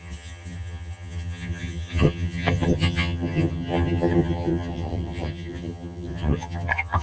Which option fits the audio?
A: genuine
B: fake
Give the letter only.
B